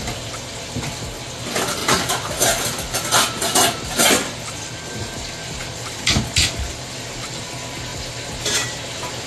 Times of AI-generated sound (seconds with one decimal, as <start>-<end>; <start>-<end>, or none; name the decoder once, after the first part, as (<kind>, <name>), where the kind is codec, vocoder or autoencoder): none